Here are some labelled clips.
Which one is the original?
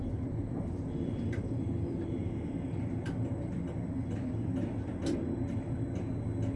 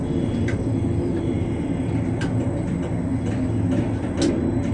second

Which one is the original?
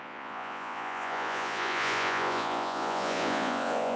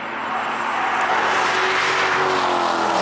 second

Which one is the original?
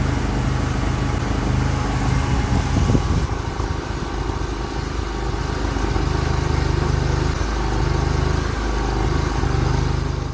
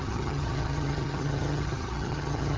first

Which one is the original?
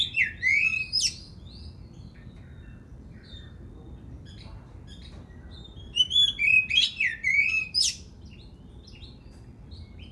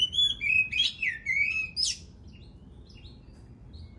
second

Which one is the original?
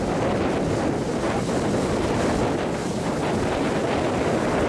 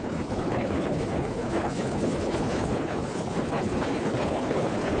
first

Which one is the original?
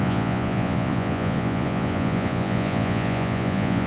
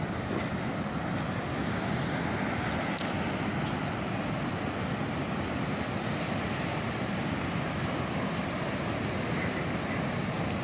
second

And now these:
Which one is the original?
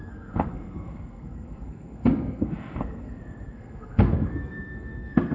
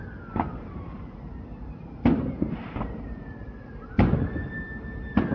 second